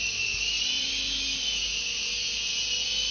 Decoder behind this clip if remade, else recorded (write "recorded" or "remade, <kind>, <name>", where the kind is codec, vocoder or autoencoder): recorded